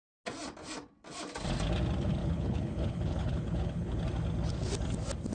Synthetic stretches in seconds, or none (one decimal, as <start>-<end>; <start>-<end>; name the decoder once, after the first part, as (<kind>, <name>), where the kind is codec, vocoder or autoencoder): 2.2-4.0 (codec, HILCodec)